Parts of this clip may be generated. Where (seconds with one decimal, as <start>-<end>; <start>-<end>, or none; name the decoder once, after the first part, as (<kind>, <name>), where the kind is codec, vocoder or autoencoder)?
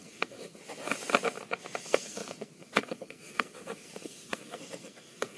0.0-0.6 (codec, SNAC); 1.8-5.4